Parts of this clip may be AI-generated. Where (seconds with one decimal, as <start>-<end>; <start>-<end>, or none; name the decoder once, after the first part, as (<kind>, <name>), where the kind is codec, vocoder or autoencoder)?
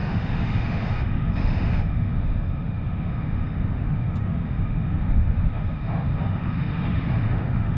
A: 0.0-7.8 (autoencoder, DAC-VAE)